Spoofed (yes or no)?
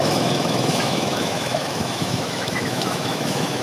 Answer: yes